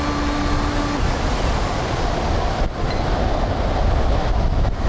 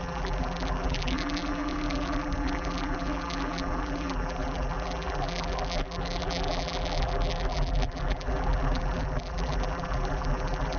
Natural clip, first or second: first